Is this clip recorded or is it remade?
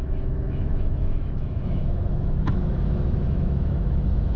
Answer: remade